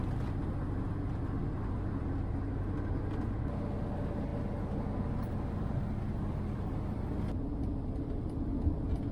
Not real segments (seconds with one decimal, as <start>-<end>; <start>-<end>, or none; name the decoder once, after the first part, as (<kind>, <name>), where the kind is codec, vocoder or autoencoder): none